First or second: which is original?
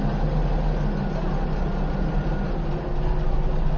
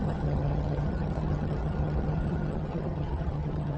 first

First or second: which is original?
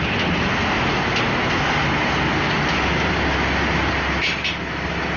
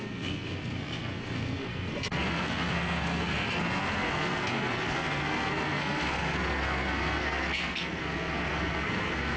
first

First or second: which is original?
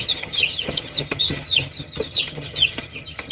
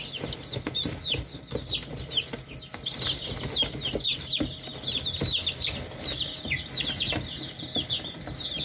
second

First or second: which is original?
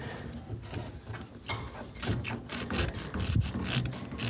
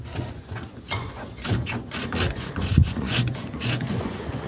first